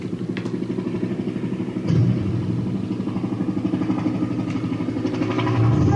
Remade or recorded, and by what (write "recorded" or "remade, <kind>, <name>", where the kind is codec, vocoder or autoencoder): recorded